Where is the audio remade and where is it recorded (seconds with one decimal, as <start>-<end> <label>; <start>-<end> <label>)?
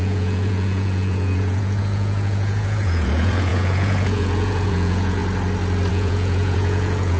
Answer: 0.0-5.2 remade; 5.2-5.9 recorded; 5.9-7.2 remade